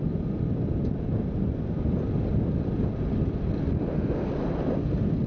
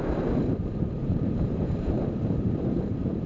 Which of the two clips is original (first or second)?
first